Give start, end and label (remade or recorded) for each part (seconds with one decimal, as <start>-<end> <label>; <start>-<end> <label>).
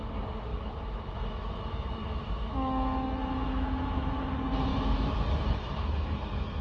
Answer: 0.0-0.5 recorded; 0.5-4.2 remade; 4.2-4.7 recorded; 4.7-6.6 remade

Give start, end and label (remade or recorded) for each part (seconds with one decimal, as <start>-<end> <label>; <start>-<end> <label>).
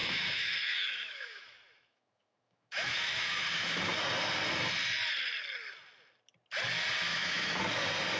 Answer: 0.0-3.8 remade; 3.8-7.1 recorded; 7.1-7.6 remade; 7.6-8.2 recorded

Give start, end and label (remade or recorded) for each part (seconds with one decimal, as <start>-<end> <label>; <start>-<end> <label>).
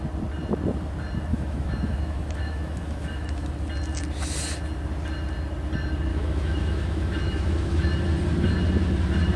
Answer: 0.0-1.3 recorded; 1.3-3.5 remade; 3.5-6.1 recorded; 6.1-7.9 remade; 7.9-9.4 recorded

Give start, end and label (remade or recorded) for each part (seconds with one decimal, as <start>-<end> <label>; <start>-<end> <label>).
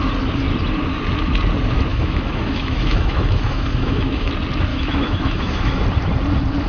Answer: 0.0-1.9 recorded; 1.9-4.3 remade; 4.3-4.7 recorded; 4.7-5.8 remade; 5.8-6.7 recorded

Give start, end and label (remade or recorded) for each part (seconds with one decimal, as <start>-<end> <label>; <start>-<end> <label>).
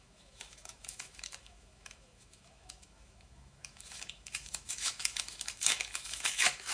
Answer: 0.0-6.7 remade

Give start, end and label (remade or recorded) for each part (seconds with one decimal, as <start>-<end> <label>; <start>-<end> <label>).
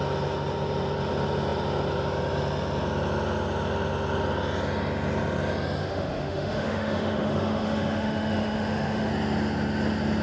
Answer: 0.0-5.8 recorded; 5.8-9.1 remade; 9.1-10.2 recorded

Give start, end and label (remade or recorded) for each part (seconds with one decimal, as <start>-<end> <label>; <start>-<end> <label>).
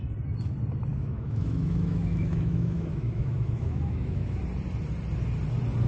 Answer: 0.0-0.9 recorded; 0.9-4.4 remade; 4.4-5.9 recorded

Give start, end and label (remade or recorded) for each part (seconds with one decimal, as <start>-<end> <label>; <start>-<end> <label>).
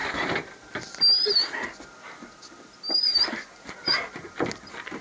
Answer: 0.0-5.0 recorded